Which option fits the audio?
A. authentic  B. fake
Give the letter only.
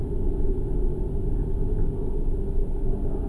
A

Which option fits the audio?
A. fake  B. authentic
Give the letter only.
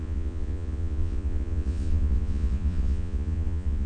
A